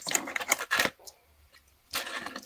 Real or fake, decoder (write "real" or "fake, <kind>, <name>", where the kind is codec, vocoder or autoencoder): real